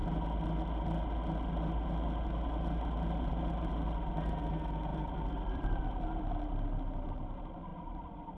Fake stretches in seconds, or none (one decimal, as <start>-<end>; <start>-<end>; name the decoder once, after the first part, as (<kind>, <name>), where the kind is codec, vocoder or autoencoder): 4.9-5.8 (vocoder, BigVGAN v2)